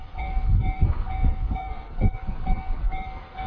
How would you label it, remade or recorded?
remade